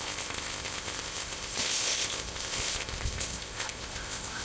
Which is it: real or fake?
fake